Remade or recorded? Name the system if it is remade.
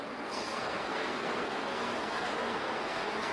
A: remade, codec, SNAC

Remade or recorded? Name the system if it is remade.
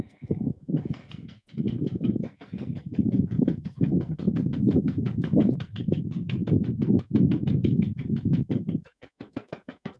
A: remade, codec, SNAC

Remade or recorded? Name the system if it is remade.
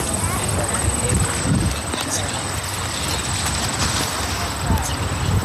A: recorded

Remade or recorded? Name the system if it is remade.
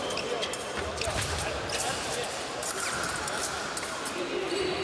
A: recorded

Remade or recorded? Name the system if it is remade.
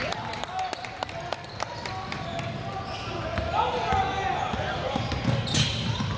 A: recorded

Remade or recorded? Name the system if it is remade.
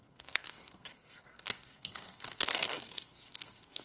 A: remade, codec, SNAC